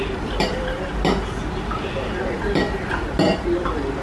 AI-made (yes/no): no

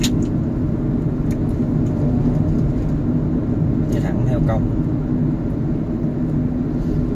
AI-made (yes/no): no